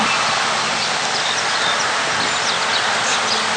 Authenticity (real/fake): real